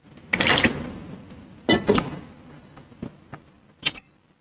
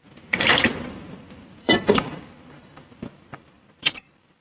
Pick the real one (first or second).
first